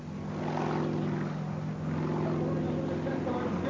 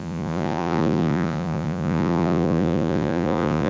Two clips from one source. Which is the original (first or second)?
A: first